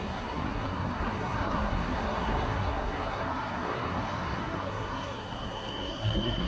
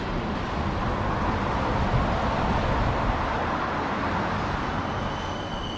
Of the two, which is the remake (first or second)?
first